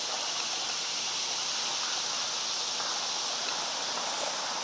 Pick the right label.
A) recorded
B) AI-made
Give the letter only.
A